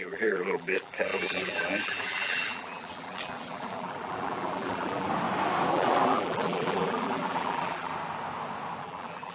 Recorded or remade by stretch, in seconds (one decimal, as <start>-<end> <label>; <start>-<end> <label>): 0.0-5.1 remade; 5.1-5.7 recorded; 5.7-7.9 remade; 7.9-8.8 recorded; 8.8-9.3 remade